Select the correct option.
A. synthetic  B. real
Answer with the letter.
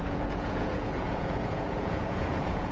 A